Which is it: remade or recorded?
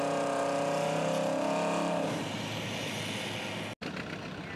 recorded